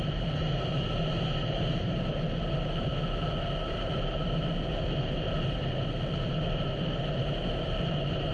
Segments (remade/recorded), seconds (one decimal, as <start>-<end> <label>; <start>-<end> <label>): 0.0-2.9 remade; 2.9-3.5 recorded; 3.5-4.2 remade; 4.2-5.0 recorded; 5.0-8.3 remade